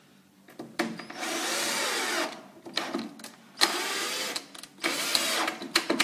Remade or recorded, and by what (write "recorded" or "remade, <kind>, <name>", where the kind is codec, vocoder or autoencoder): recorded